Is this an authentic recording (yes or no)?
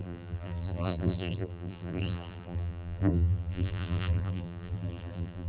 no